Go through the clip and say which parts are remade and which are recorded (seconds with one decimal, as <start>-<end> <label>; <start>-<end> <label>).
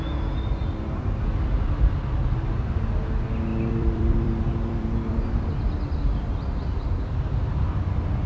0.0-3.5 recorded; 3.5-5.5 remade; 5.5-8.3 recorded